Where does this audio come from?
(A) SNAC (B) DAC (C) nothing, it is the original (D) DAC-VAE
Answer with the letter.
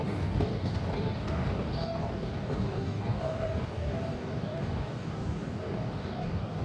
B